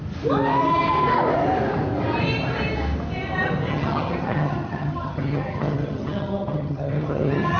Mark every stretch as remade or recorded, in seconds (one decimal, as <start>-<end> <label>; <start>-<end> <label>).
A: 0.0-3.7 recorded; 3.7-7.6 remade